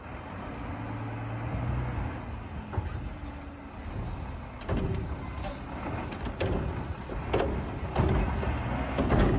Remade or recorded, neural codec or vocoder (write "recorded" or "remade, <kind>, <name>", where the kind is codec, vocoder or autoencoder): recorded